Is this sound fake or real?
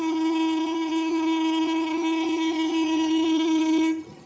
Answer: fake